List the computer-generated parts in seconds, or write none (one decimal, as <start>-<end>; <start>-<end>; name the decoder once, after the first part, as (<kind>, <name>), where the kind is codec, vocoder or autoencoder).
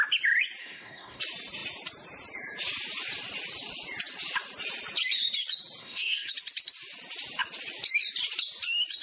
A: 0.6-1.2 (codec, SNAC); 5.8-6.3